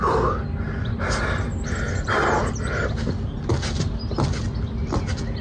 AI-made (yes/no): no